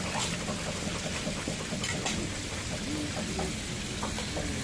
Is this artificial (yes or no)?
no